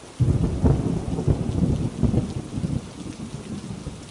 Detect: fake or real real